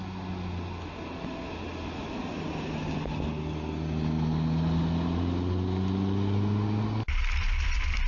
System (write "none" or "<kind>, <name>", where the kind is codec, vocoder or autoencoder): none